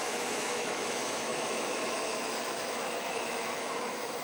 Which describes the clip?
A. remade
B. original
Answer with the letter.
A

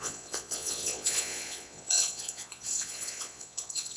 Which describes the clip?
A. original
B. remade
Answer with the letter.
B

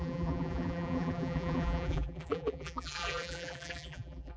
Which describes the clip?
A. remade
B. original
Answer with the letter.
A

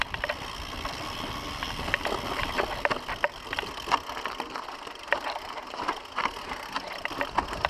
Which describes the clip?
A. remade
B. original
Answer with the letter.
B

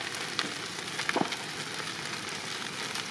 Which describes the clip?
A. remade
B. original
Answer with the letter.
B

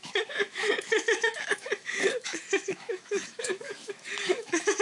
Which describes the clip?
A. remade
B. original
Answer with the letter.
A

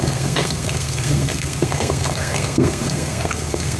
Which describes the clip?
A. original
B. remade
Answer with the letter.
B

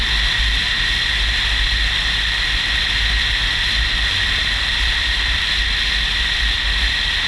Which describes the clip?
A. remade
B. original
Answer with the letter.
B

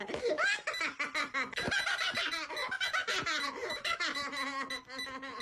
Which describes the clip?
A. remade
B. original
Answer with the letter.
B